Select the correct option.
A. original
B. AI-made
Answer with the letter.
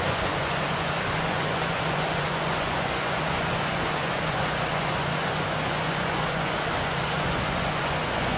B